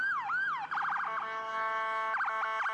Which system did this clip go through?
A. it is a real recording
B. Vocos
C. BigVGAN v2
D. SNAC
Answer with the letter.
A